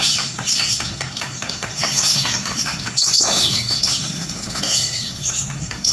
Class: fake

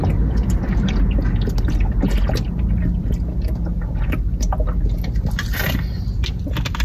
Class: real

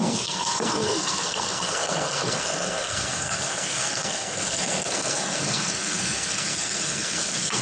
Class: fake